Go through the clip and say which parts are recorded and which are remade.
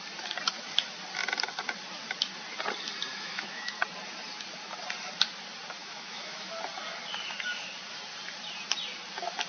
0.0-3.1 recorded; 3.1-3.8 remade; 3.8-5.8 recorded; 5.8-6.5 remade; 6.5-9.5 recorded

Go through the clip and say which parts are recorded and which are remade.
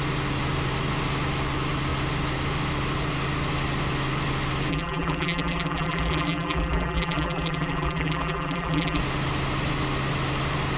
0.0-4.7 recorded; 4.7-9.0 remade; 9.0-10.8 recorded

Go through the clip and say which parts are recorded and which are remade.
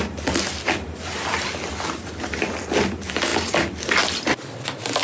0.0-5.0 recorded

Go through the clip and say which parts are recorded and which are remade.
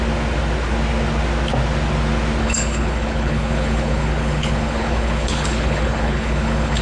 0.0-2.4 recorded; 2.4-6.8 remade